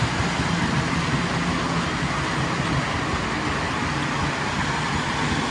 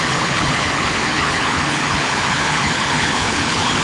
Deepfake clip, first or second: second